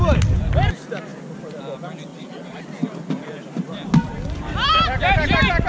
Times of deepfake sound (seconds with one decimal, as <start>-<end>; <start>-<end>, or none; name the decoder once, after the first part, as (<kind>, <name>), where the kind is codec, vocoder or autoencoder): 2.1-2.6 (vocoder, Vocos)